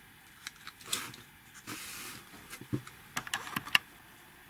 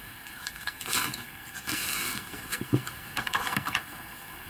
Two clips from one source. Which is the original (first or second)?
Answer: first